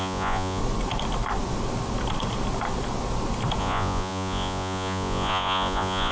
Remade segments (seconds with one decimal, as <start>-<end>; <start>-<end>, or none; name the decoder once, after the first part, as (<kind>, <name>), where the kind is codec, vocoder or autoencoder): 0.0-0.6 (vocoder, Vocos); 3.6-6.1